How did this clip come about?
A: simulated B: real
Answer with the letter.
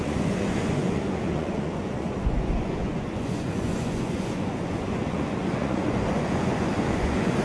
A